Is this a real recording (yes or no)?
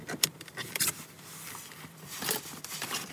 no